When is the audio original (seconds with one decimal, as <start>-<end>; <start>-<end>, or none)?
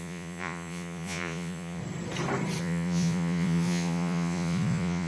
1.8-2.6